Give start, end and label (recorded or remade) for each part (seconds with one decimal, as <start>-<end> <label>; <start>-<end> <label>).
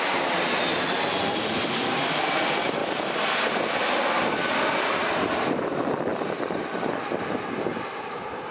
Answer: 0.0-2.8 recorded; 2.8-5.3 remade; 5.3-8.5 recorded